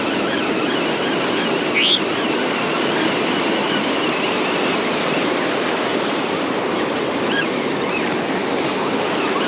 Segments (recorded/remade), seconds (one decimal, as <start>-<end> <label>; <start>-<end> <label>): 0.0-5.9 recorded; 5.9-6.4 remade; 6.4-9.5 recorded